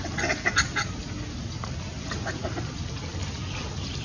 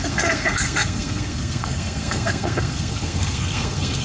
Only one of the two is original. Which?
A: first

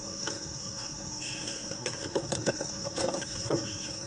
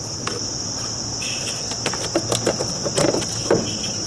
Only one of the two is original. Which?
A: second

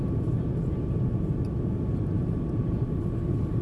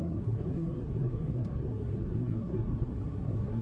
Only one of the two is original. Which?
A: first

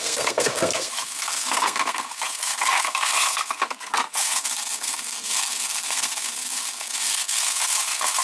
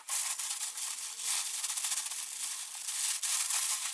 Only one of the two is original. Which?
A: second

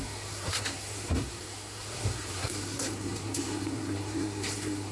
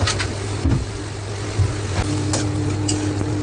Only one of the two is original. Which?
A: second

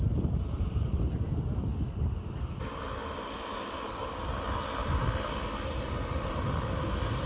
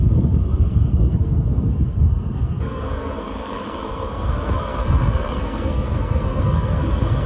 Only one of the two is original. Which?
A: first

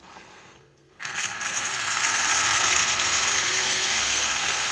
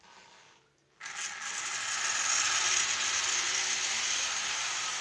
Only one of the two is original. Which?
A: second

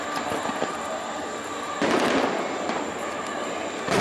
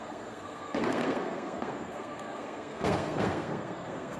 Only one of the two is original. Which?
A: first